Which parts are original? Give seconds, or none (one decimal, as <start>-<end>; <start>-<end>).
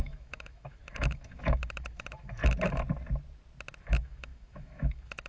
2.4-3.8